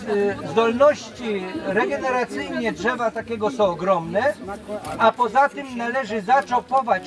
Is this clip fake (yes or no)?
no